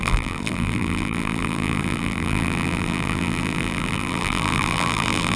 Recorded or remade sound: remade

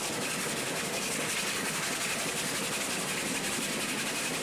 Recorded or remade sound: recorded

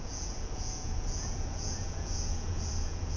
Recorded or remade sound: remade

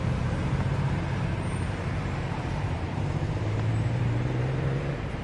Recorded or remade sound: remade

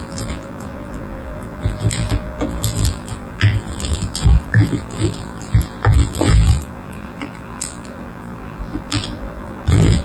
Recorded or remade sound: remade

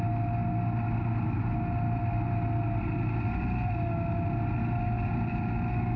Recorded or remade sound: recorded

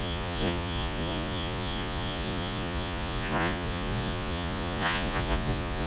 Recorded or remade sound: remade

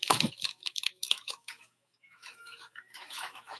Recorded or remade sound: remade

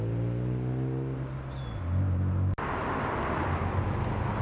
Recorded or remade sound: recorded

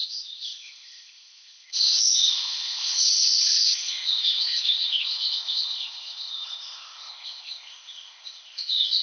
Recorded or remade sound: remade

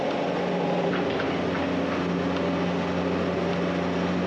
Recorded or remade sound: recorded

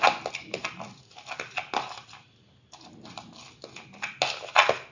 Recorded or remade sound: recorded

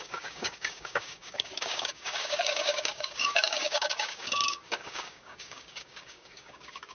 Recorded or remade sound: remade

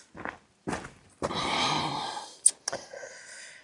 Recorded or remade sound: recorded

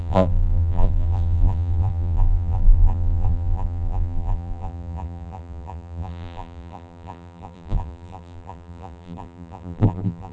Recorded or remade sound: remade